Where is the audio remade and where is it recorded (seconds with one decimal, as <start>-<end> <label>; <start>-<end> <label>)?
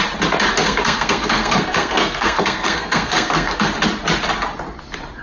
0.0-0.6 recorded; 0.6-3.7 remade; 3.7-5.2 recorded